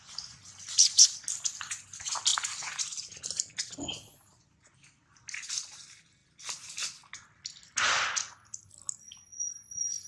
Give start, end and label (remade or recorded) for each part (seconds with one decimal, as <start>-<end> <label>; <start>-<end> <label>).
0.0-10.1 recorded